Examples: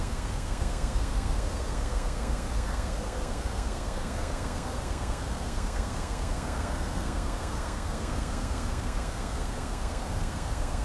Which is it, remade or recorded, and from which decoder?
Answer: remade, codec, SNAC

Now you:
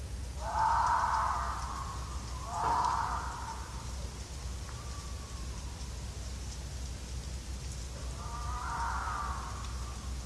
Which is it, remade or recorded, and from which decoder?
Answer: recorded